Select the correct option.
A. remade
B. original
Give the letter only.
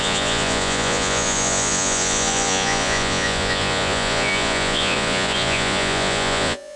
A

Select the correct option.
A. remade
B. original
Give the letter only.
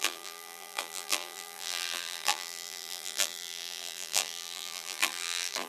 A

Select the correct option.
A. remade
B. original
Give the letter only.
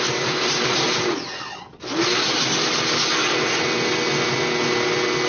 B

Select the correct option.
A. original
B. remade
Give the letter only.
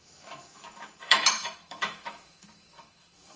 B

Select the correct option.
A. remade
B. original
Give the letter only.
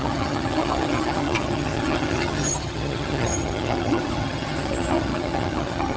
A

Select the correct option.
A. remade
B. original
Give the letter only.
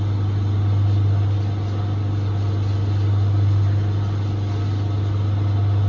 B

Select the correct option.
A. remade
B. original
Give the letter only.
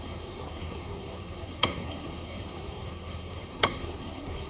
A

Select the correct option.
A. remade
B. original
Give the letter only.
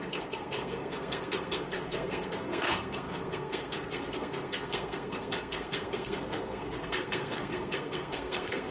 A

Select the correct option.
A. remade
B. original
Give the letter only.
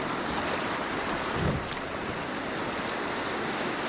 B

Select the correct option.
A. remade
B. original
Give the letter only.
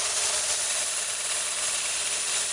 B